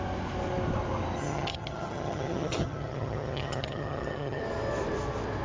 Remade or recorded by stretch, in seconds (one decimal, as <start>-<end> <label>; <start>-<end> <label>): 0.0-1.2 recorded; 1.2-4.4 remade; 4.4-5.4 recorded